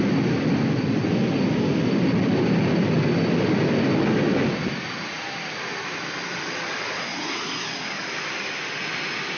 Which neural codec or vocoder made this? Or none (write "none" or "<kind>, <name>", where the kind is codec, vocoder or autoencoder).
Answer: none